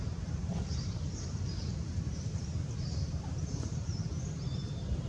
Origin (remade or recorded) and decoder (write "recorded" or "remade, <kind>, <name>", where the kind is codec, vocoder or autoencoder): remade, vocoder, BigVGAN v2